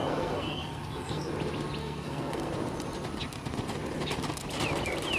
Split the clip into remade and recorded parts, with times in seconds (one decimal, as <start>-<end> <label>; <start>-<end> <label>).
0.0-1.3 remade; 1.3-1.8 recorded; 1.8-2.5 remade; 2.5-5.2 recorded